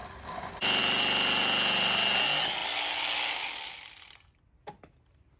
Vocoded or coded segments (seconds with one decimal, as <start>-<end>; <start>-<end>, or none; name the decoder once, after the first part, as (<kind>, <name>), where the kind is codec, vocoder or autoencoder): 0.0-0.8 (vocoder, BigVGAN v2)